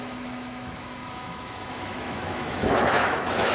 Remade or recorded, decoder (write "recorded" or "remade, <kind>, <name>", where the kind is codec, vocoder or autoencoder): remade, autoencoder, DAC-VAE